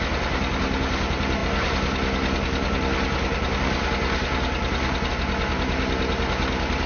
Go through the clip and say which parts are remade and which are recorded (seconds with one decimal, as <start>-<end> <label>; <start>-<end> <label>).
0.0-6.9 recorded